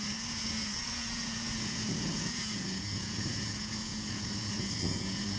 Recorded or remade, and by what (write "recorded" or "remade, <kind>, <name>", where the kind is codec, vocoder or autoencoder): remade, vocoder, Vocos